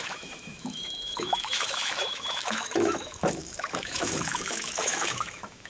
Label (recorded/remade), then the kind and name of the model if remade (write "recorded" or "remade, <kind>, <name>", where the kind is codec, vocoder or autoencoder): remade, autoencoder, DAC-VAE